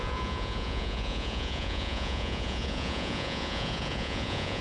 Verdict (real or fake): fake